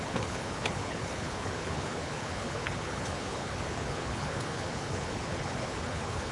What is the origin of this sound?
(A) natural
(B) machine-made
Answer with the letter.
B